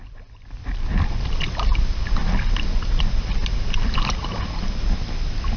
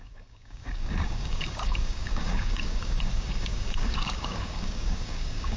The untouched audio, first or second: first